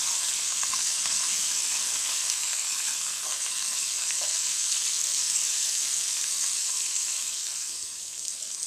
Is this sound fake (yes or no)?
yes